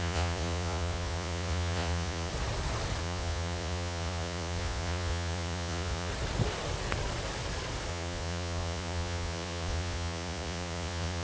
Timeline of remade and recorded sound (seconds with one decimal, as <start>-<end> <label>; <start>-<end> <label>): 0.0-2.3 remade; 2.3-3.0 recorded; 3.0-6.1 remade; 6.1-7.9 recorded; 7.9-11.2 remade